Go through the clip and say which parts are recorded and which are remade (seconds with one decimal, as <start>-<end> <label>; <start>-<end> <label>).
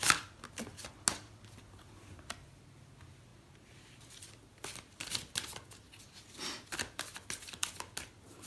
0.0-8.5 recorded